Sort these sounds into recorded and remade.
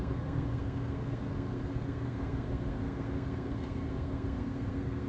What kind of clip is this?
remade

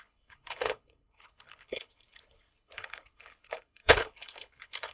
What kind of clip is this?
remade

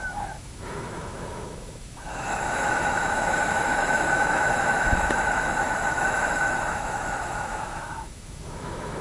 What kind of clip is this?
remade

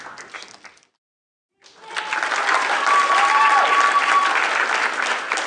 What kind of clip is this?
recorded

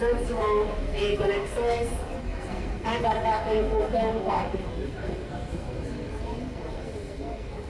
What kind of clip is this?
remade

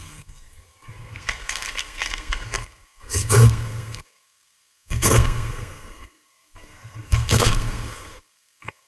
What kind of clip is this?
remade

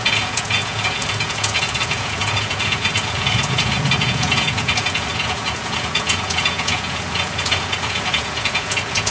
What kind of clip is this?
remade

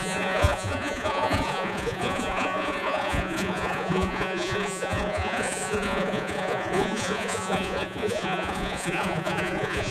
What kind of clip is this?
remade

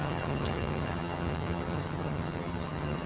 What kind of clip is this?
remade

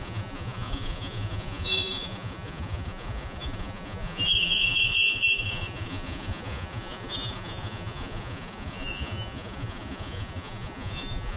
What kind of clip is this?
remade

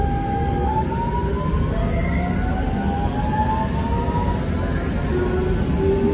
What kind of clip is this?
recorded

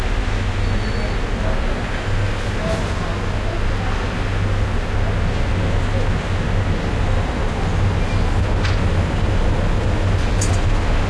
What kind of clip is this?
recorded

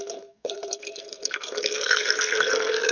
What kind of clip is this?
remade